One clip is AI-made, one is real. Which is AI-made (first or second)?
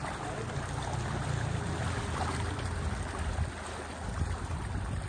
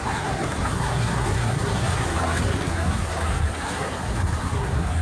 second